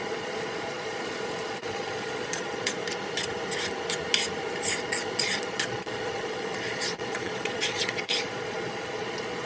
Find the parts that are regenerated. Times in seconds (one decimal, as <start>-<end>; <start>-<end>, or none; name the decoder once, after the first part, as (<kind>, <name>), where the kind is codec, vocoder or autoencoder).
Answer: 0.0-2.8 (vocoder, Vocos); 4.8-9.5